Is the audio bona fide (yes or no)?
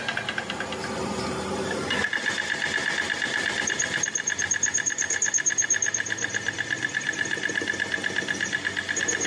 yes